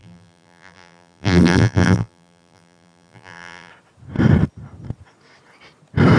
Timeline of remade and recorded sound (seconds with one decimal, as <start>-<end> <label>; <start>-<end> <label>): 0.0-3.7 remade; 3.7-6.2 recorded